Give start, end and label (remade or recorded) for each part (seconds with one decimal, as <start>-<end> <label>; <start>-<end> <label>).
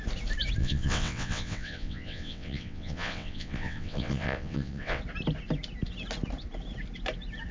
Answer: 0.0-0.6 recorded; 0.6-5.0 remade; 5.0-7.5 recorded